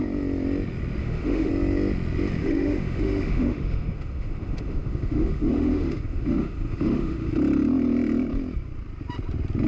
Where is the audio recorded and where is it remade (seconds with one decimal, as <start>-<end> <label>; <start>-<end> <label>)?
0.0-1.0 recorded; 1.0-1.5 remade; 1.5-2.4 recorded; 2.4-7.3 remade; 7.3-9.7 recorded